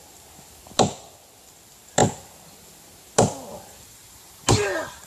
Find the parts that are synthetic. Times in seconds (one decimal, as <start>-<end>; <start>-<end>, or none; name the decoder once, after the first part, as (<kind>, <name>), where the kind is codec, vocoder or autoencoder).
none

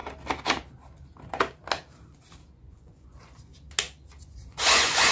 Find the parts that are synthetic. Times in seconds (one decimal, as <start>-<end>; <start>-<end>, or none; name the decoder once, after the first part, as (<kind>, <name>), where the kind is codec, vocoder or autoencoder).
2.5-3.5 (vocoder, Vocos); 4.2-5.1

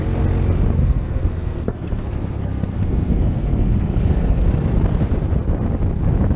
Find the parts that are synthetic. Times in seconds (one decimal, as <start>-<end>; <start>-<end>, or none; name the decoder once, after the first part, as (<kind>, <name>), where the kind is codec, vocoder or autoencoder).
0.8-4.5 (codec, SNAC)

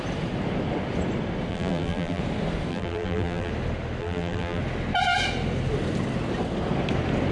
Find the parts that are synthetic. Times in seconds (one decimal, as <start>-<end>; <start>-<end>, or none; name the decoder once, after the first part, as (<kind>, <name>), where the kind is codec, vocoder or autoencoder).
1.5-2.2 (vocoder, BigVGAN v2); 2.7-3.5; 4.0-4.6